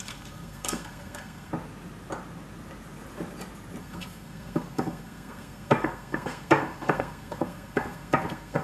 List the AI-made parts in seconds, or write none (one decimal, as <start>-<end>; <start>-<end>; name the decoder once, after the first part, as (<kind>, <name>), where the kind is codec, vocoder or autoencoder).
0.0-1.5 (codec, SNAC); 3.8-8.6